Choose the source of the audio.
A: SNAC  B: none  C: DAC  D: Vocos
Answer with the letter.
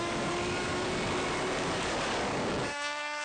C